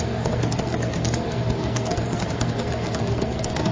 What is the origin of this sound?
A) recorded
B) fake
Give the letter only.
B